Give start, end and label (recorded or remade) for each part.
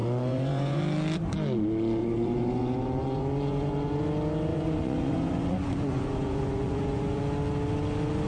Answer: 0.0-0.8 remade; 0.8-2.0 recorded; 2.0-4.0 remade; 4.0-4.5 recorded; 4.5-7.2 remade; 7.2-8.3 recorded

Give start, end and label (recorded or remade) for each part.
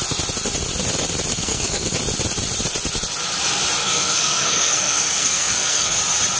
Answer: 0.0-1.3 recorded; 1.3-1.9 remade; 1.9-3.8 recorded; 3.8-6.0 remade; 6.0-6.4 recorded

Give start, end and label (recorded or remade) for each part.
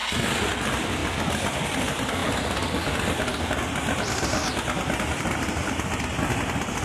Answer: 0.0-0.5 recorded; 0.5-1.0 remade; 1.0-1.6 recorded; 1.6-2.2 remade; 2.2-3.4 recorded; 3.4-6.8 remade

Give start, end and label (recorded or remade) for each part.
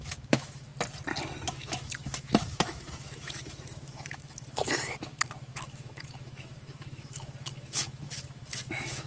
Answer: 0.0-0.7 remade; 0.7-1.5 recorded; 1.5-9.1 remade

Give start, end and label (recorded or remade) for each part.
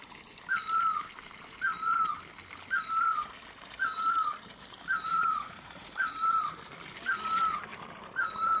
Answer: 0.0-5.1 recorded; 5.1-5.9 remade; 5.9-8.6 recorded